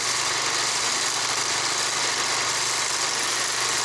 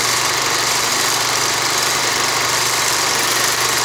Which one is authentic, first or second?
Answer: first